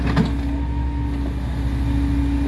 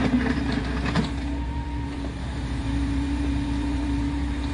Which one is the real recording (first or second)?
first